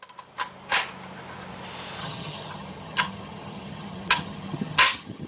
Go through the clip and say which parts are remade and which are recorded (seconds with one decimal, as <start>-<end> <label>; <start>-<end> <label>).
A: 0.0-2.0 recorded; 2.0-5.3 remade